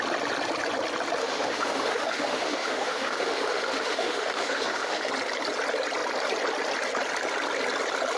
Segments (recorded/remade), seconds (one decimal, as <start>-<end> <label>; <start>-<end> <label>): 0.0-1.2 recorded; 1.2-5.1 remade; 5.1-8.2 recorded

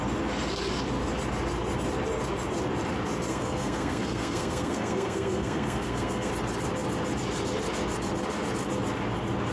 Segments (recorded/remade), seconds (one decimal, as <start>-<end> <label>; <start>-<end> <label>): 0.0-3.3 recorded; 3.3-6.3 remade; 6.3-9.5 recorded

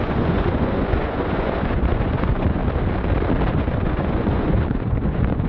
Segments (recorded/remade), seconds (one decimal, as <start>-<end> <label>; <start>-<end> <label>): 0.0-2.6 remade; 2.6-3.5 recorded; 3.5-5.5 remade

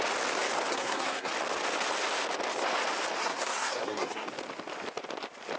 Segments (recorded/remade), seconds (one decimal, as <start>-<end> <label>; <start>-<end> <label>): 0.0-0.7 recorded; 0.7-1.3 remade; 1.3-3.2 recorded; 3.2-4.3 remade; 4.3-5.6 recorded

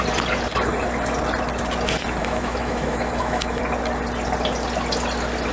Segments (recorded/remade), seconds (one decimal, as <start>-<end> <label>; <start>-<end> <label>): 0.0-2.2 recorded; 2.2-3.6 remade; 3.6-5.5 recorded

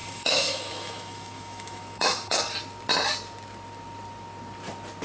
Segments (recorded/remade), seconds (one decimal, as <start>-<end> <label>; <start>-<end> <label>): 0.0-2.4 remade; 2.4-5.0 recorded

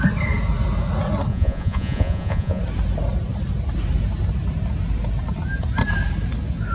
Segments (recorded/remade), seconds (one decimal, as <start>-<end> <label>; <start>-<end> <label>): 0.0-1.3 recorded; 1.3-2.6 remade; 2.6-6.7 recorded

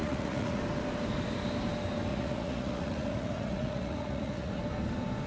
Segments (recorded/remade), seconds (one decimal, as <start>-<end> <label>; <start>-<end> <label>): 0.0-0.6 remade; 0.6-2.1 recorded; 2.1-4.6 remade; 4.6-5.3 recorded